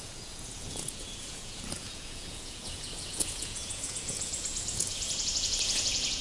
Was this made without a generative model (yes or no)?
no